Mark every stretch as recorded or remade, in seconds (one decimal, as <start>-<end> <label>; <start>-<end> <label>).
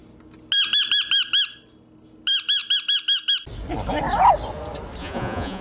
0.0-5.0 recorded; 5.0-5.6 remade